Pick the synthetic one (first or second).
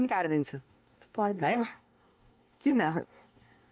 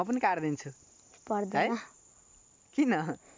first